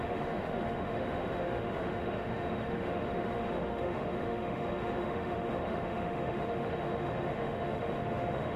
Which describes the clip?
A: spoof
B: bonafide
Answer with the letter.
A